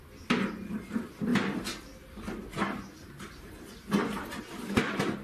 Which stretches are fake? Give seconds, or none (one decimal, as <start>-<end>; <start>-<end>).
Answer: none

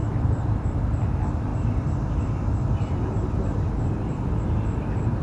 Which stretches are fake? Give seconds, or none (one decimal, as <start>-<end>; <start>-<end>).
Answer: 0.0-0.8; 1.5-4.4

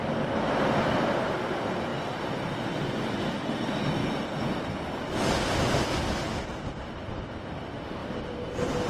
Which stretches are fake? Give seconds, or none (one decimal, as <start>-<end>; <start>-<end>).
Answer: none

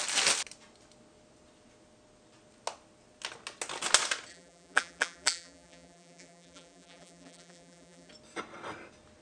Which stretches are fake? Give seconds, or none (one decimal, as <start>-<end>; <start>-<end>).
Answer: 4.3-8.1